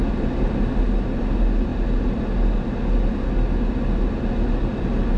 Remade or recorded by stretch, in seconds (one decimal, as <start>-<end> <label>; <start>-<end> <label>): 0.0-5.2 recorded